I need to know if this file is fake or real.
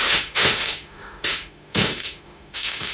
fake